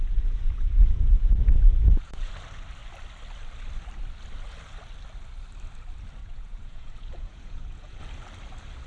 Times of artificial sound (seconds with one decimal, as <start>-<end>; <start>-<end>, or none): 0.0-2.3; 6.2-8.0